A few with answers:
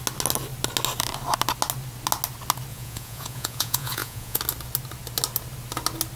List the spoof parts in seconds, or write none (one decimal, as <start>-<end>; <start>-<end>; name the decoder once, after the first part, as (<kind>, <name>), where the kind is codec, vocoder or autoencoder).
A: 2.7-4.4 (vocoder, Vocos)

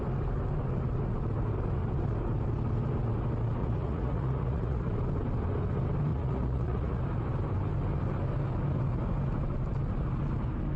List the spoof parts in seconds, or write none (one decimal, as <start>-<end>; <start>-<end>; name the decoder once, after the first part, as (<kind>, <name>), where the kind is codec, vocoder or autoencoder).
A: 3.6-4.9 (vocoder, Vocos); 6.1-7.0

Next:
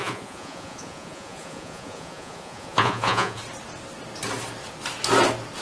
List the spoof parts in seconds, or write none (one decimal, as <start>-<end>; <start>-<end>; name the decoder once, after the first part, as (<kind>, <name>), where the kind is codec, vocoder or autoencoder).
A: 0.0-3.4 (vocoder, Vocos)